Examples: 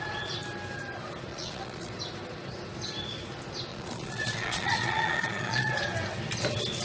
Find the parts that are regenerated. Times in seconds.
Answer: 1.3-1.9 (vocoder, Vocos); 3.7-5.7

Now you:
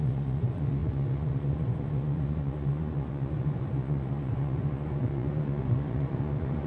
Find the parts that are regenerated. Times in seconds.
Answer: 0.0-6.7 (vocoder, Vocos)

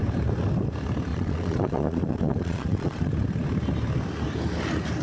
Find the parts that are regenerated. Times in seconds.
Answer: 1.1-3.1 (vocoder, Vocos)

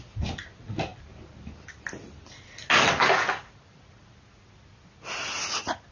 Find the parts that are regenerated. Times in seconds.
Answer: none

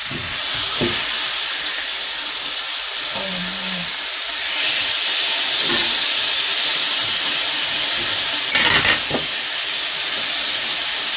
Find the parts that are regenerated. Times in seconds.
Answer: 0.0-0.5 (vocoder, Vocos)

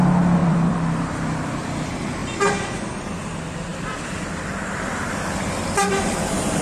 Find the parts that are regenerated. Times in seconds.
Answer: 0.4-1.0 (vocoder, BigVGAN v2); 2.2-3.3; 3.7-4.5